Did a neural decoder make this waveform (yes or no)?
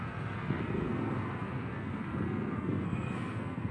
yes